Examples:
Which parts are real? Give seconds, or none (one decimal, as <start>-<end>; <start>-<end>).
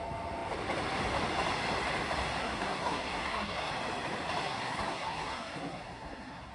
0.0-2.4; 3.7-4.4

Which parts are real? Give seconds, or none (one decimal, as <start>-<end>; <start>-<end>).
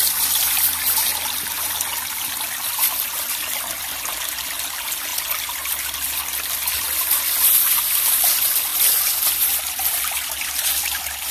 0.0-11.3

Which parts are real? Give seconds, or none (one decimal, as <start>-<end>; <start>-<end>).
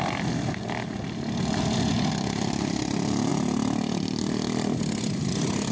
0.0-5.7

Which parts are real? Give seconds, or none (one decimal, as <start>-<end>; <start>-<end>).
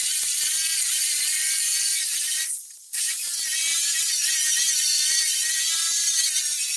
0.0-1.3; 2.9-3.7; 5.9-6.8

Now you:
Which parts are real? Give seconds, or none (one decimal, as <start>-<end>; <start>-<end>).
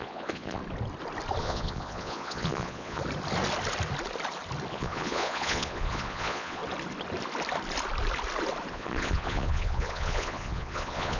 0.6-1.4; 3.0-4.7; 6.6-8.7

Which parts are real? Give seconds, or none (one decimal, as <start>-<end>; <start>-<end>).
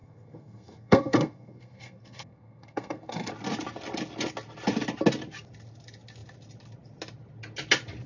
3.3-8.1